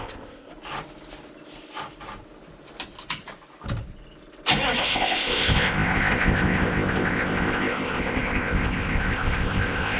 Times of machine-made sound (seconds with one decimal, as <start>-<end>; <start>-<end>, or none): 0.0-0.5; 4.8-10.0